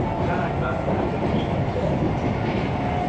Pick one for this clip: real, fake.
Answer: real